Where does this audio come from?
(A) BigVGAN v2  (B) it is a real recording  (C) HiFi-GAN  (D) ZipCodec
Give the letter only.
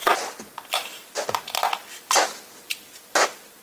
B